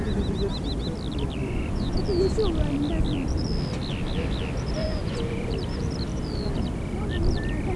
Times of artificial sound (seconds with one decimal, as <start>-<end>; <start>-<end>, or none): 1.4-2.0; 4.8-5.5